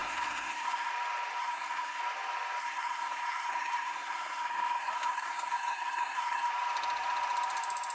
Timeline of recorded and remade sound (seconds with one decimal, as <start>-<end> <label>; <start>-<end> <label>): 0.0-0.9 remade; 0.9-1.4 recorded; 1.4-2.0 remade; 2.0-2.6 recorded; 2.6-6.5 remade; 6.5-7.9 recorded